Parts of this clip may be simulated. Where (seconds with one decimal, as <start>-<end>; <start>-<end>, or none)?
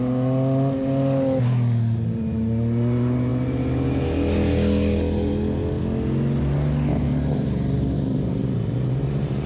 6.9-9.5